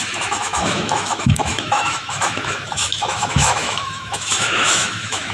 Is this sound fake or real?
fake